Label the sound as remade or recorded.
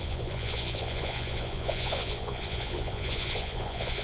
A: remade